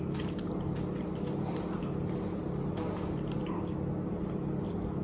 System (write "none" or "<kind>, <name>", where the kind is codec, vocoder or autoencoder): none